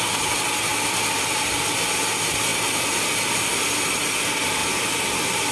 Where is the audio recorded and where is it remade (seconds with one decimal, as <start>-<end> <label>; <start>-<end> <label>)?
0.0-0.7 recorded; 0.7-1.5 remade; 1.5-2.5 recorded; 2.5-3.1 remade; 3.1-4.6 recorded; 4.6-5.5 remade